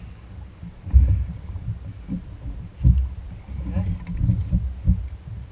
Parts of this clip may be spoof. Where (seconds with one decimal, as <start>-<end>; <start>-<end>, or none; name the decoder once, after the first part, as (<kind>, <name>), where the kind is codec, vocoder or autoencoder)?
none